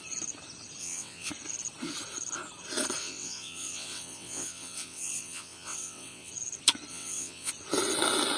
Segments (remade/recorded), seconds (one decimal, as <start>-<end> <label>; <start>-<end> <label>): 0.0-0.8 recorded; 0.8-1.3 remade; 1.3-3.0 recorded; 3.0-6.3 remade; 6.3-6.9 recorded; 6.9-7.5 remade; 7.5-8.4 recorded